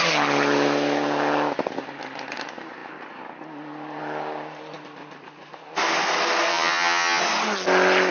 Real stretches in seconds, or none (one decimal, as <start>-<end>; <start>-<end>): 0.0-6.5; 7.2-8.1